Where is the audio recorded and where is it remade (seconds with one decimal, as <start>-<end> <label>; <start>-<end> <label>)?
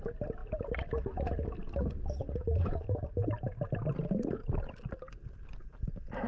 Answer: 0.0-0.4 recorded; 0.4-3.0 remade; 3.0-4.4 recorded; 4.4-5.1 remade; 5.1-6.3 recorded